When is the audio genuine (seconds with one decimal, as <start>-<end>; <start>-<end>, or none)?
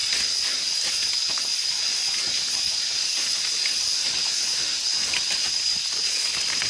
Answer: 0.0-6.7